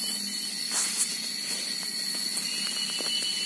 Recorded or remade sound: recorded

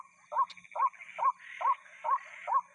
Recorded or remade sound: recorded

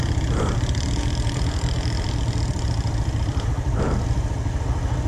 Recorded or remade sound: recorded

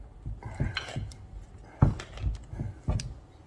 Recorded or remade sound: recorded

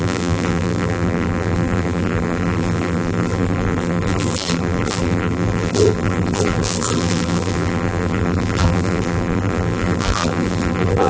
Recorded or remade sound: remade